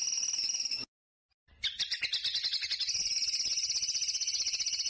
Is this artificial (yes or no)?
no